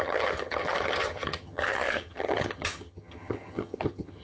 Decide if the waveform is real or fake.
fake